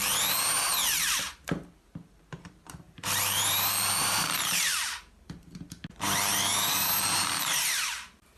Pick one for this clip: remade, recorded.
remade